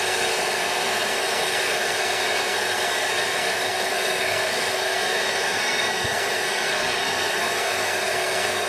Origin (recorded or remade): remade